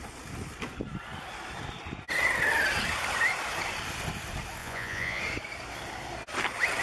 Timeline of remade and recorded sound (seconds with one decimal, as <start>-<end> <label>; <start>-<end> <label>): 0.0-4.6 recorded; 4.6-5.2 remade; 5.2-6.8 recorded